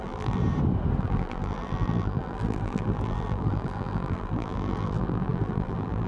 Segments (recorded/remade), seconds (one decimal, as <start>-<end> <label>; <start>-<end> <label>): 0.0-0.4 remade; 0.4-1.0 recorded; 1.0-6.1 remade